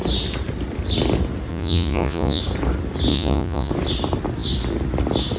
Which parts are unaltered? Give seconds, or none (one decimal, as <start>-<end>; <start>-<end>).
0.0-1.5; 2.4-3.1; 3.7-5.4